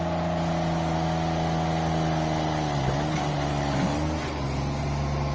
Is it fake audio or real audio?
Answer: real